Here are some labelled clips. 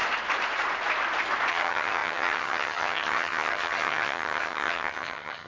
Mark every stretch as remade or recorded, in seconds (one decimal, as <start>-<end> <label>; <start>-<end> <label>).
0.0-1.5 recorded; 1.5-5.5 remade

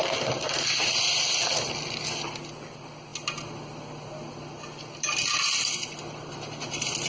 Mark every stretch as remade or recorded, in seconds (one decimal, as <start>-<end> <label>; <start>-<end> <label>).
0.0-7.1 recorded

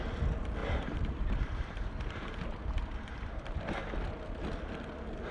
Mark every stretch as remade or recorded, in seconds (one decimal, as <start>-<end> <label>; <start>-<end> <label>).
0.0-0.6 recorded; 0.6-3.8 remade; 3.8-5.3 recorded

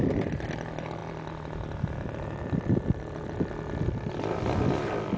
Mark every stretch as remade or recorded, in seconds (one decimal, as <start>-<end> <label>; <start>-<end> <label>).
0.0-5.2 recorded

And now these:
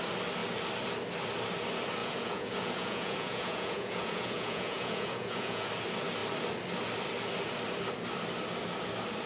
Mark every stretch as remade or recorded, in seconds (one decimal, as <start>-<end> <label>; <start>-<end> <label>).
0.0-2.0 recorded; 2.0-5.7 remade; 5.7-9.3 recorded